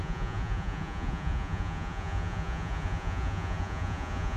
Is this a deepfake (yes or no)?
yes